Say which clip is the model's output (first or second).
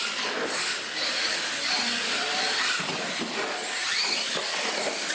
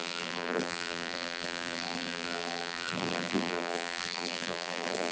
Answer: second